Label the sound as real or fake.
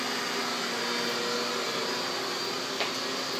real